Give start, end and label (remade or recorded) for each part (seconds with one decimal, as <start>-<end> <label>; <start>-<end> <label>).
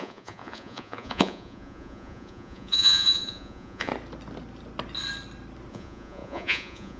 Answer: 0.0-3.9 remade; 3.9-5.7 recorded; 5.7-7.0 remade